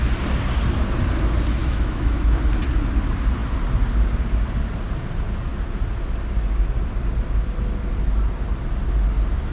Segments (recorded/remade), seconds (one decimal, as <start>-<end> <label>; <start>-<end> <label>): 0.0-1.6 recorded; 1.6-2.4 remade; 2.4-9.5 recorded